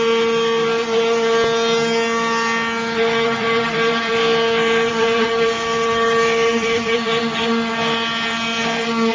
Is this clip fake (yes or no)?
no